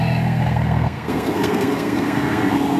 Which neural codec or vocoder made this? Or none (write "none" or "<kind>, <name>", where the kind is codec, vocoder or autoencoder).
codec, SNAC